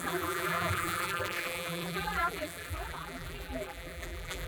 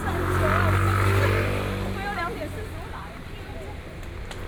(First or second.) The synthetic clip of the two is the first